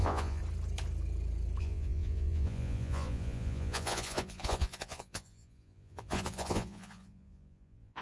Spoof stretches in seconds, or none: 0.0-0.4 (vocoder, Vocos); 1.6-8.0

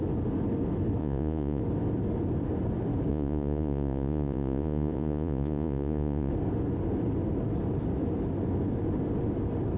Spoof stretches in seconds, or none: 1.0-1.6 (vocoder, Vocos); 3.1-6.3

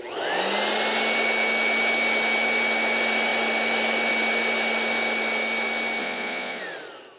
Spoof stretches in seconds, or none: 6.0-6.6 (vocoder, Vocos)

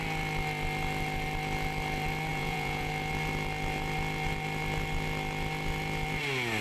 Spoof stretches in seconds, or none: 2.3-2.9 (vocoder, Vocos)

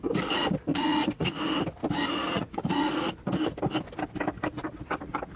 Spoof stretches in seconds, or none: 0.7-1.4 (vocoder, Vocos); 2.3-3.1

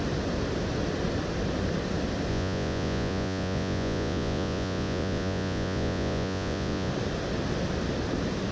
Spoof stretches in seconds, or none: 2.3-6.9 (vocoder, Vocos)

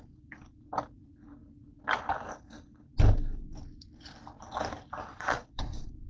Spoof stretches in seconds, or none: 5.1-6.1 (vocoder, Vocos)